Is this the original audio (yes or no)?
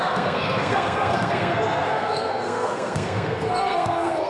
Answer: no